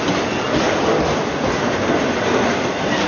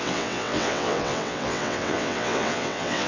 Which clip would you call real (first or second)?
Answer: first